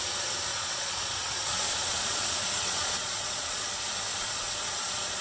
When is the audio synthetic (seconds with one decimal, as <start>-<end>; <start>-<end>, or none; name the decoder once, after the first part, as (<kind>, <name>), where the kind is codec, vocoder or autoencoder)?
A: 0.5-3.6 (vocoder, Vocos); 4.1-5.2